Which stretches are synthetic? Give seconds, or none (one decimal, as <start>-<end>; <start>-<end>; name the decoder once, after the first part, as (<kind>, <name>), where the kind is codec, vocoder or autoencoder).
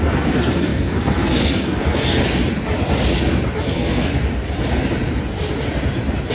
0.0-2.2 (codec, SNAC); 3.6-4.1